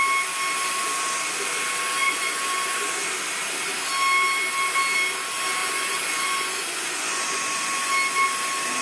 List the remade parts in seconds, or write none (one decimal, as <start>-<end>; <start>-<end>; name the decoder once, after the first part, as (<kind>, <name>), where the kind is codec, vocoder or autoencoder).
2.0-2.9 (vocoder, Vocos); 5.6-7.9